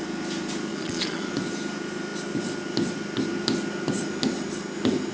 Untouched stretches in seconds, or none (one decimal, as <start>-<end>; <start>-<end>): 0.0-0.7; 1.3-5.1